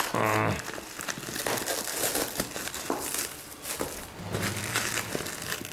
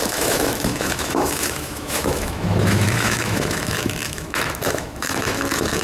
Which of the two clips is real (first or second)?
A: first